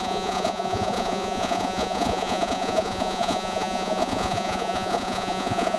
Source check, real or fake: fake